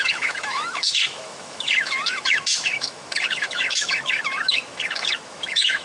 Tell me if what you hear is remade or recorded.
remade